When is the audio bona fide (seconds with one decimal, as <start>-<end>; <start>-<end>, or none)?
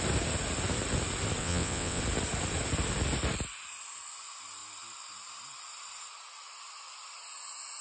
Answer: 0.0-1.4; 2.0-7.8